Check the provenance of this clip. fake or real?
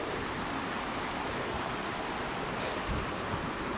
real